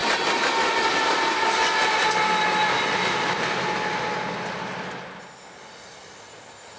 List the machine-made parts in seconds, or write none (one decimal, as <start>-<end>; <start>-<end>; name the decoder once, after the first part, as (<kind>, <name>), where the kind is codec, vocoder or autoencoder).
none